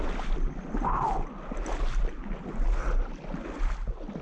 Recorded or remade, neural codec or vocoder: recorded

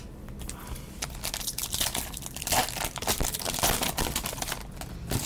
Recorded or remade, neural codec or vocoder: recorded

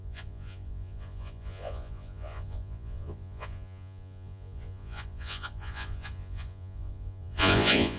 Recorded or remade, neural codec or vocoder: remade, vocoder, Vocos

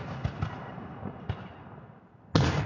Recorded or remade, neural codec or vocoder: recorded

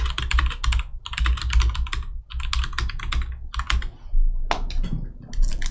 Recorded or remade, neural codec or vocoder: recorded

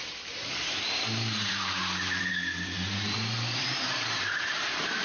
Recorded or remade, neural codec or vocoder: remade, vocoder, BigVGAN v2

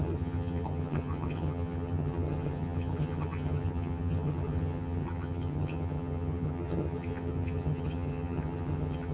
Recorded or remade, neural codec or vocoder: remade, vocoder, HiFi-GAN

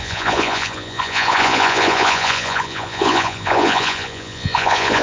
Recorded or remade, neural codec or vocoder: remade, vocoder, Vocos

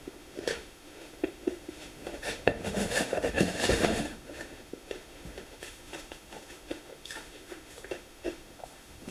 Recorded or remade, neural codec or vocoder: remade, autoencoder, DAC-VAE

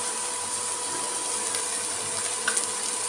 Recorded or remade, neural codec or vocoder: recorded